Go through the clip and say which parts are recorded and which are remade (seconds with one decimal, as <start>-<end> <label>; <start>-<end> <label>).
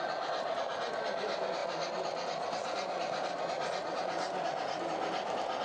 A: 0.0-5.6 recorded